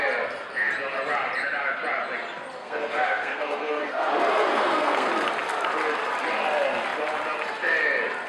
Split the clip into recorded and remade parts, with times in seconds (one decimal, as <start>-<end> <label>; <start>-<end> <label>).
0.0-2.6 recorded; 2.6-4.1 remade; 4.1-4.5 recorded; 4.5-5.1 remade; 5.1-8.3 recorded